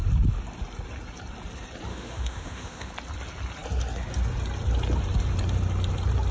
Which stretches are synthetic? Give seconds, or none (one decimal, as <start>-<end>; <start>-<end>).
1.9-2.9